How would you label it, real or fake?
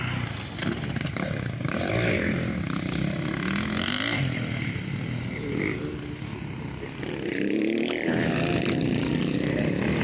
real